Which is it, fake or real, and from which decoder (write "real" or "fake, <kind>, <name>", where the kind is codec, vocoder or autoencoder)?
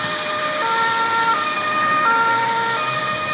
real